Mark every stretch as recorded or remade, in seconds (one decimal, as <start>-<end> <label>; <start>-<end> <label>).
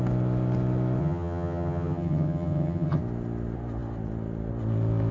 0.0-1.0 recorded; 1.0-3.0 remade; 3.0-5.1 recorded